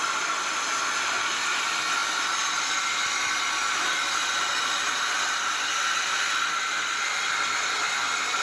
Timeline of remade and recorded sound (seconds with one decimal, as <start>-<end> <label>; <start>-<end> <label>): 0.0-8.4 recorded